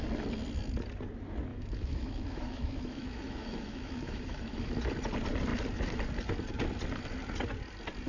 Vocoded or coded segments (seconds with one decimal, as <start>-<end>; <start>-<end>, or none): 1.5-4.7